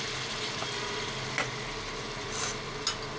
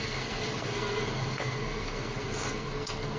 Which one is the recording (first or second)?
first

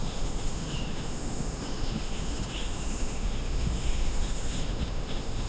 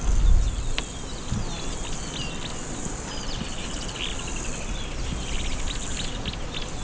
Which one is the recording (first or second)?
second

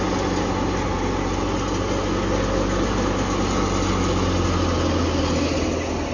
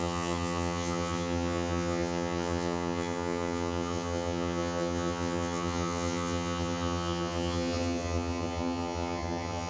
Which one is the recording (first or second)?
first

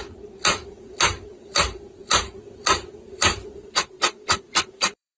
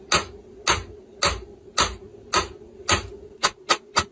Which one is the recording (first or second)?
second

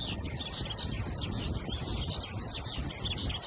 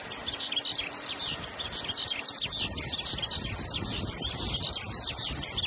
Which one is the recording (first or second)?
first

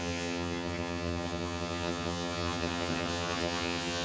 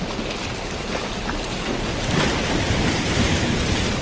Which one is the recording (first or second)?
second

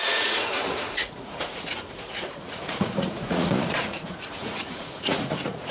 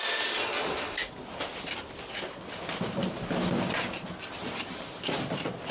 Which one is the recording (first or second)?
second